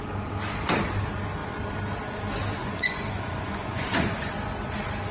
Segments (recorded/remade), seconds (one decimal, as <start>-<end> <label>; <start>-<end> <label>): 0.0-2.6 recorded; 2.6-4.3 remade; 4.3-5.1 recorded